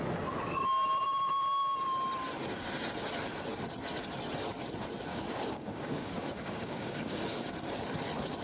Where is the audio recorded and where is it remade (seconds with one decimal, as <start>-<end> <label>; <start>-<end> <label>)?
0.0-5.1 recorded; 5.1-7.5 remade; 7.5-8.4 recorded